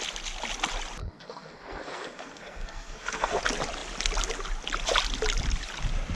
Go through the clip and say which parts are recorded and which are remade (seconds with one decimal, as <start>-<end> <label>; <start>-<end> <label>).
0.0-1.0 recorded; 1.0-3.4 remade; 3.4-6.1 recorded

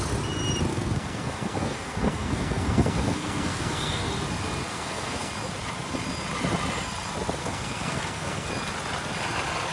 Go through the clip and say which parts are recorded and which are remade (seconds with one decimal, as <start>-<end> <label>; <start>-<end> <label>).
0.0-0.7 recorded; 0.7-4.1 remade; 4.1-4.7 recorded; 4.7-5.3 remade; 5.3-7.4 recorded; 7.4-8.5 remade; 8.5-9.7 recorded

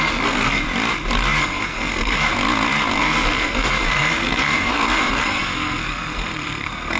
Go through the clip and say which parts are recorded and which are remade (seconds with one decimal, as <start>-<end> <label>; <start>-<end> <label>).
0.0-0.6 remade; 0.6-1.4 recorded; 1.4-2.3 remade; 2.3-3.0 recorded; 3.0-7.0 remade

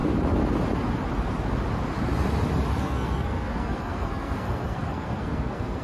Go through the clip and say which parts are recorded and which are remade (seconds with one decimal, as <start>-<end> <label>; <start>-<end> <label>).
0.0-2.8 recorded; 2.8-5.8 remade

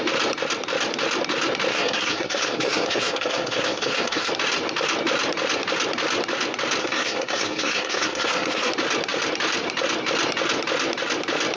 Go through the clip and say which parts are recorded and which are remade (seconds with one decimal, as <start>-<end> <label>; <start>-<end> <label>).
0.0-1.7 recorded; 1.7-4.3 remade; 4.3-6.8 recorded; 6.8-8.7 remade; 8.7-11.6 recorded